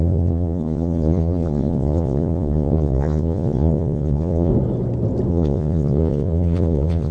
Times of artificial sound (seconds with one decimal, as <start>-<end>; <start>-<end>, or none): 0.0-4.5; 5.3-7.1